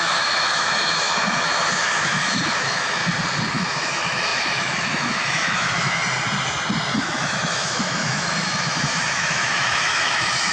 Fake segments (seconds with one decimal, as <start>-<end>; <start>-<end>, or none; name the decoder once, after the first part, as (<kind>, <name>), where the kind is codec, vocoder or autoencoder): 0.0-3.0 (autoencoder, DAC-VAE); 3.5-6.0; 7.0-10.5